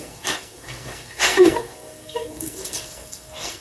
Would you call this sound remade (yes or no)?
yes